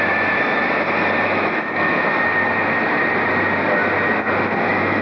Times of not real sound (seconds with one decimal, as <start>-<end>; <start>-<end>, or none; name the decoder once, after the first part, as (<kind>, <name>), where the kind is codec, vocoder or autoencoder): 0.0-0.6 (autoencoder, DAC-VAE); 1.2-2.3; 4.6-5.0